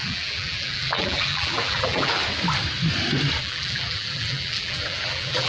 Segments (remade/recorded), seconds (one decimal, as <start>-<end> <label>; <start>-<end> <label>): 0.0-2.2 remade; 2.2-3.4 recorded; 3.4-5.5 remade